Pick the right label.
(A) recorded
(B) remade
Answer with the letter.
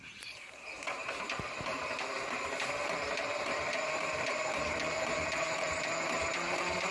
B